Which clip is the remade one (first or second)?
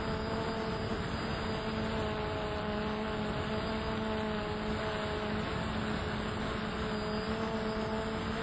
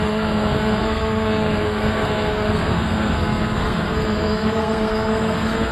second